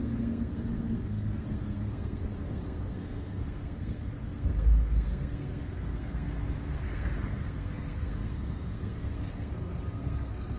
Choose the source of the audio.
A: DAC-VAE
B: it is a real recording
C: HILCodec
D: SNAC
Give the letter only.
D